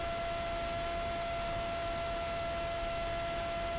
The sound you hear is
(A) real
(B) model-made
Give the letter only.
A